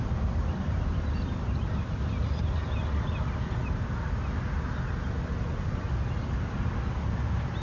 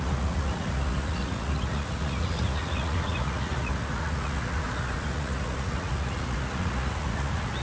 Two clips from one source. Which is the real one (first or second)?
first